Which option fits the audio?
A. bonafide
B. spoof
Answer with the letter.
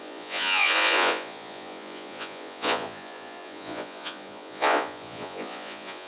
B